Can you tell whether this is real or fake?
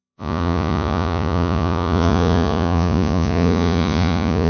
fake